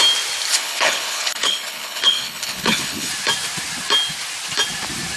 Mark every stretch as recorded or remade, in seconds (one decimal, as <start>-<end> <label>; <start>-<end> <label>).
0.0-0.5 recorded; 0.5-3.1 remade; 3.1-5.2 recorded

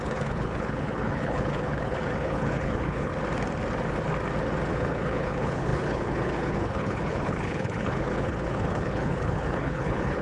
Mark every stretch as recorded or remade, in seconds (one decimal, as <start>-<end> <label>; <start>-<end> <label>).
0.0-3.1 remade; 3.1-4.7 recorded; 4.7-10.2 remade

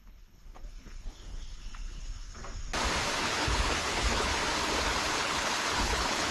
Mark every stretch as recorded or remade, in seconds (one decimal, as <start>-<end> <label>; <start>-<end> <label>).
0.0-2.4 remade; 2.4-3.2 recorded; 3.2-4.3 remade; 4.3-5.1 recorded; 5.1-6.3 remade

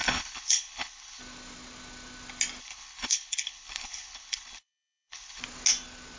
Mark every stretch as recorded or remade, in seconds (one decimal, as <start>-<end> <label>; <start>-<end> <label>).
0.0-1.2 remade; 1.2-2.6 recorded; 2.6-5.4 remade; 5.4-6.2 recorded

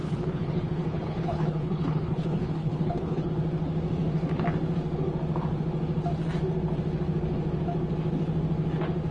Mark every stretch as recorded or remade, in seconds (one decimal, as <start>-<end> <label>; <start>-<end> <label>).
0.0-3.3 remade; 3.3-9.1 recorded